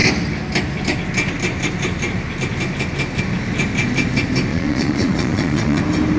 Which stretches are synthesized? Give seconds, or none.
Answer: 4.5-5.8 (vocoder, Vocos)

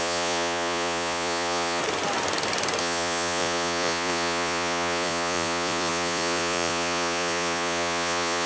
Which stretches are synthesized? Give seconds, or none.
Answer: 0.0-1.8 (vocoder, Vocos); 2.8-8.5

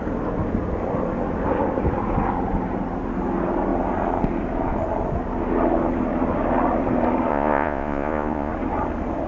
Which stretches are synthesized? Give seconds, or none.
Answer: 7.3-8.5 (vocoder, Vocos)

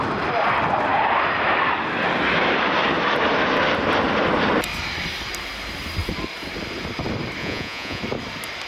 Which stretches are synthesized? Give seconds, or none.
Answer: 7.4-8.0 (vocoder, Vocos)

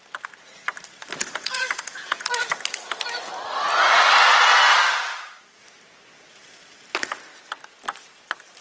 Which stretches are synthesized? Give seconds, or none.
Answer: 1.2-2.5 (vocoder, Vocos)

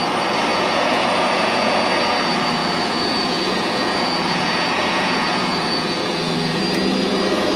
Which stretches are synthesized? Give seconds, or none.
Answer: 0.5-1.9 (vocoder, Vocos); 2.6-6.6